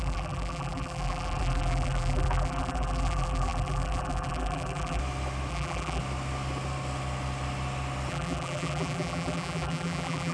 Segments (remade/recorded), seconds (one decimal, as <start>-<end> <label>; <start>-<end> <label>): 0.0-5.0 remade; 5.0-5.5 recorded; 5.5-6.0 remade; 6.0-8.1 recorded; 8.1-10.3 remade